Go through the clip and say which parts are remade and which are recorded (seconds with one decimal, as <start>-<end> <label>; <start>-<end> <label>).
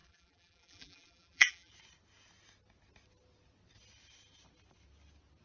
0.0-1.7 remade; 1.7-5.4 recorded